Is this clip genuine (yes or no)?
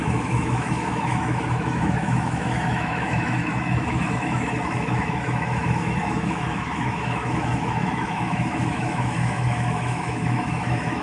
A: no